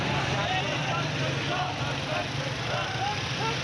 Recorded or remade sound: recorded